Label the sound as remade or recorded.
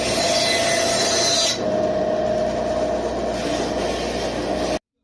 recorded